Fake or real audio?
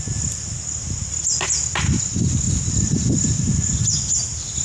real